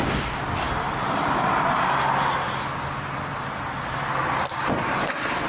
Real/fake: real